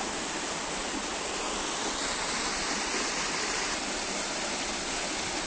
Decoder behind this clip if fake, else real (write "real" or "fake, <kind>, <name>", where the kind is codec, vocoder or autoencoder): real